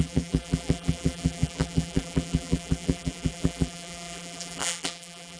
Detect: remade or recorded remade